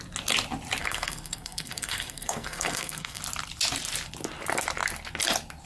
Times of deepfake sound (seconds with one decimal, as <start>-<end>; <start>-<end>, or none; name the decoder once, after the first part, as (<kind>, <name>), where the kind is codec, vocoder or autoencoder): 0.8-3.2 (codec, SNAC)

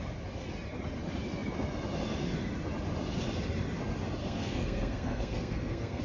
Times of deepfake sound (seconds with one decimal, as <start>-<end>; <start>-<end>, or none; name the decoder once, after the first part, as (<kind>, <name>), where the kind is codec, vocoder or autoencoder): 4.2-6.0 (codec, SNAC)